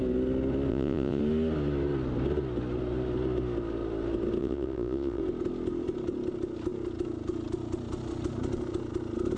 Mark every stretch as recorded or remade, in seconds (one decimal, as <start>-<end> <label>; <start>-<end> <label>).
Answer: 0.0-0.7 recorded; 0.7-1.2 remade; 1.2-4.4 recorded; 4.4-5.2 remade; 5.2-9.4 recorded

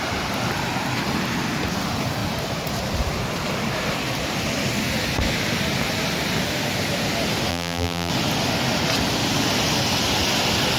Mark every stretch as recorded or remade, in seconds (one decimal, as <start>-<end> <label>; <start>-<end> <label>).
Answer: 0.0-7.5 recorded; 7.5-8.1 remade; 8.1-10.8 recorded

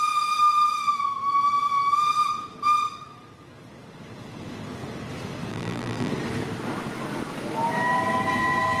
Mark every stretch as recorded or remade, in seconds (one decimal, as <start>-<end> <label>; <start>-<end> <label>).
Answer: 0.0-5.5 recorded; 5.5-6.1 remade; 6.1-8.8 recorded

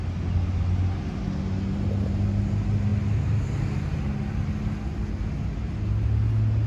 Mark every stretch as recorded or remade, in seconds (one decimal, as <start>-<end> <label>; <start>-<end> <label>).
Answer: 0.0-6.7 recorded

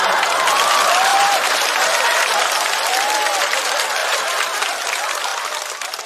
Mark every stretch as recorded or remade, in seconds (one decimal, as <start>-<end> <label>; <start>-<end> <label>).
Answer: 0.0-1.1 recorded; 1.1-2.5 remade; 2.5-4.0 recorded; 4.0-4.6 remade; 4.6-6.1 recorded